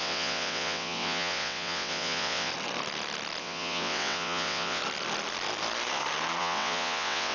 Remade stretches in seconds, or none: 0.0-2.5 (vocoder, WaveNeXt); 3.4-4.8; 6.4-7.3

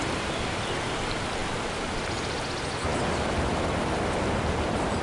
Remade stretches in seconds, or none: none

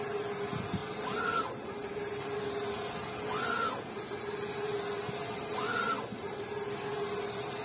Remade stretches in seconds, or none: none

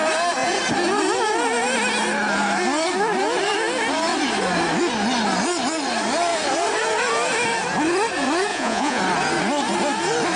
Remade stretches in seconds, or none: 8.5-9.0 (vocoder, Vocos)

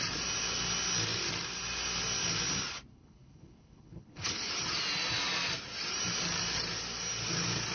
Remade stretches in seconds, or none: 2.9-4.5 (codec, HILCodec)

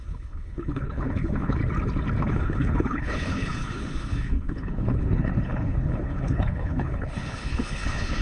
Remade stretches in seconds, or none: 0.0-1.6 (codec, HILCodec); 2.2-8.2

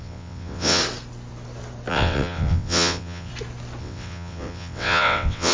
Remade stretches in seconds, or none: 0.0-0.8 (vocoder, WaveNeXt); 1.9-3.3; 3.8-5.5